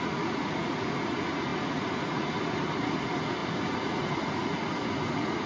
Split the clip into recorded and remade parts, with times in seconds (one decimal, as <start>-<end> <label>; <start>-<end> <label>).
0.0-5.5 remade